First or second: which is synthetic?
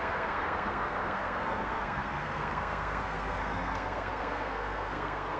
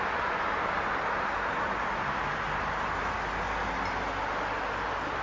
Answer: first